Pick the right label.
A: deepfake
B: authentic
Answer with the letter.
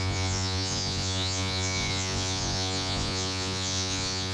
A